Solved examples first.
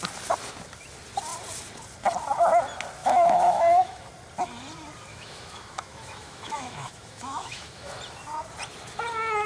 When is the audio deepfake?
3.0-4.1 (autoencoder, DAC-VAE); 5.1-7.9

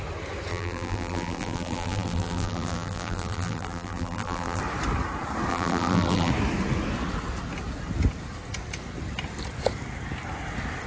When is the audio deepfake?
0.5-4.6 (vocoder, BigVGAN v2); 5.5-6.3

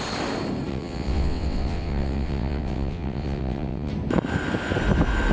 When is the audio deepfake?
0.7-3.9 (vocoder, WaveNeXt)

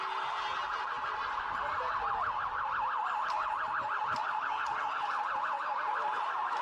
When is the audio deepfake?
none

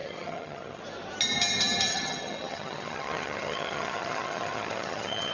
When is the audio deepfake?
0.0-0.8 (vocoder, HiFi-GAN); 1.9-5.3